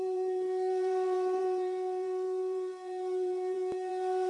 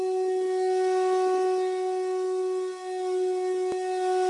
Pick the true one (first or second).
second